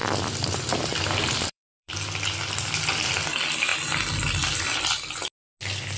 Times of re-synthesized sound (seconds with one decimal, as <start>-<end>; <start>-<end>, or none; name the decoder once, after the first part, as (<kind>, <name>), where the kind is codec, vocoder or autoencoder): 0.0-2.9 (vocoder, BigVGAN v2)